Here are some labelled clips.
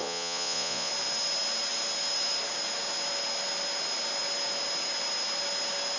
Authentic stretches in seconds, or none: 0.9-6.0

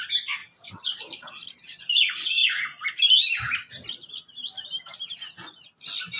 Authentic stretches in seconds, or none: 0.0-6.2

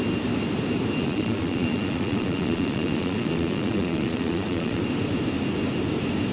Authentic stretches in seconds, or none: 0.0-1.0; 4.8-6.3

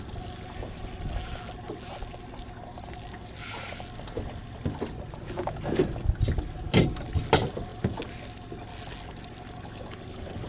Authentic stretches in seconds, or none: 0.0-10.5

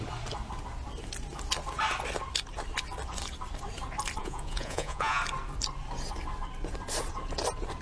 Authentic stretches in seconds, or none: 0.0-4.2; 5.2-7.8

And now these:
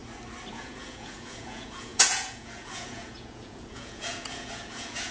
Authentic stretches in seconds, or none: 0.0-0.5

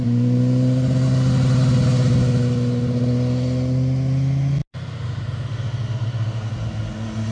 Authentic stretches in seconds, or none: 0.0-7.3